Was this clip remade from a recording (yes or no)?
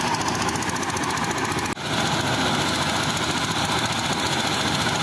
no